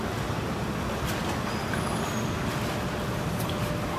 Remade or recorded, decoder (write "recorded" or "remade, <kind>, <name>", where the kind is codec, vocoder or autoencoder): recorded